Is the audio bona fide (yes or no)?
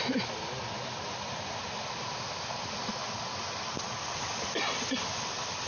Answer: yes